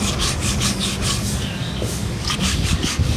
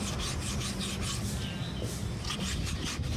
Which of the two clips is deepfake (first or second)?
first